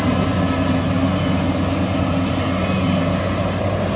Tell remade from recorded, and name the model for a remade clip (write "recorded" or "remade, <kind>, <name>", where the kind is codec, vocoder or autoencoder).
recorded